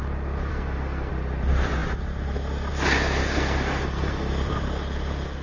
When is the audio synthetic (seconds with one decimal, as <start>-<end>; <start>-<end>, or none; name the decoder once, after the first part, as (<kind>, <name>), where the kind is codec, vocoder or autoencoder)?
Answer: 0.5-1.1 (codec, SNAC); 3.2-4.3